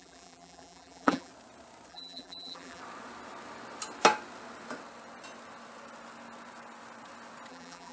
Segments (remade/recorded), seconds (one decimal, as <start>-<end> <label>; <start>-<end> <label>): 0.0-1.3 remade; 1.3-1.9 recorded; 1.9-2.8 remade; 2.8-7.5 recorded; 7.5-7.9 remade